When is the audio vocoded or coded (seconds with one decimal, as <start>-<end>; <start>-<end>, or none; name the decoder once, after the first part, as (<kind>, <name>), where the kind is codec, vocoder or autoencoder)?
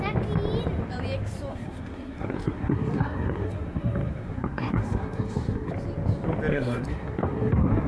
1.5-5.7 (codec, SNAC); 6.5-7.9